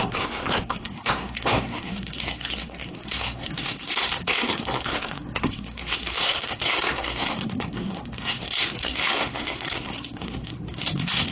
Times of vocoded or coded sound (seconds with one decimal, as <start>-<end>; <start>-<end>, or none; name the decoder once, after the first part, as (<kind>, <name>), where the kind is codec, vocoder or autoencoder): 0.0-11.3 (codec, SNAC)